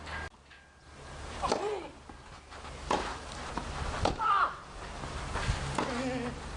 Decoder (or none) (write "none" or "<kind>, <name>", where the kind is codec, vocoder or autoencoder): none